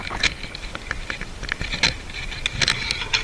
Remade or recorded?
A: recorded